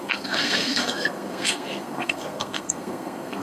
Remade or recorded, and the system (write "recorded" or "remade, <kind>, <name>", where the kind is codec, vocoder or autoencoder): remade, codec, SNAC